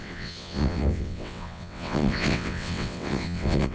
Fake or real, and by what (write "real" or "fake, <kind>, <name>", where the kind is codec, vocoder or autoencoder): fake, vocoder, WaveNeXt